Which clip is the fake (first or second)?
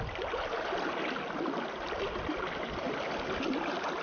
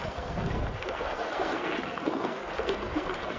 second